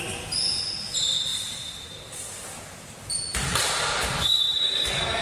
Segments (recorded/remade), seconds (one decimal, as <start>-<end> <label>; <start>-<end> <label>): 0.0-1.3 recorded; 1.3-4.3 remade; 4.3-5.2 recorded